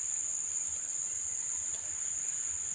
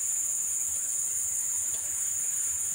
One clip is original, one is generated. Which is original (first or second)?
first